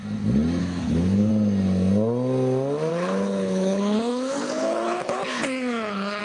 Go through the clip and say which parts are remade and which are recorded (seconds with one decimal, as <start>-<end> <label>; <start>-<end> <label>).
0.0-0.6 recorded; 0.6-1.3 remade; 1.3-2.9 recorded; 2.9-6.2 remade